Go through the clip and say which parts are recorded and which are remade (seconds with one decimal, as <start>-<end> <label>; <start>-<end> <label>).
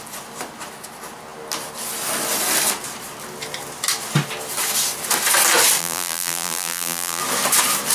0.0-5.8 recorded; 5.8-7.2 remade; 7.2-7.9 recorded